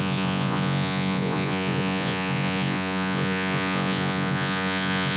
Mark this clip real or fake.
fake